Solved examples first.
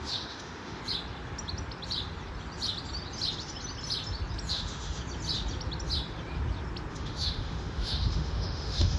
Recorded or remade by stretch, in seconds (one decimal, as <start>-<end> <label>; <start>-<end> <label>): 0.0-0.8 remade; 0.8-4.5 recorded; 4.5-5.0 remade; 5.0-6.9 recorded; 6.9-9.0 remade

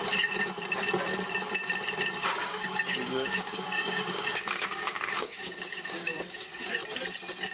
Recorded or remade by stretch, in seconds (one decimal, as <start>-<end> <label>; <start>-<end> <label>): 0.0-2.2 recorded; 2.2-6.7 remade; 6.7-7.5 recorded

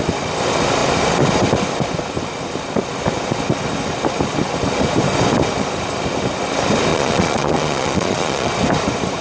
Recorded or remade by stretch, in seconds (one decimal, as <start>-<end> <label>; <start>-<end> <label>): 0.0-6.9 recorded; 6.9-8.5 remade; 8.5-9.2 recorded

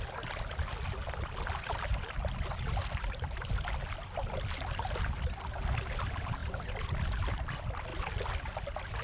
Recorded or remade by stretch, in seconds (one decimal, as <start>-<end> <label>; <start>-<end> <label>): 0.0-1.0 recorded; 1.0-3.5 remade; 3.5-6.4 recorded; 6.4-7.1 remade; 7.1-9.0 recorded

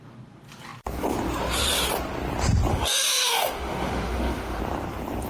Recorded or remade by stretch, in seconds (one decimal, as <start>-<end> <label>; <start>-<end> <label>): 0.0-2.7 recorded; 2.7-4.6 remade; 4.6-5.3 recorded